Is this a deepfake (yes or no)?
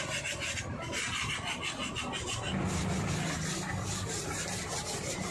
no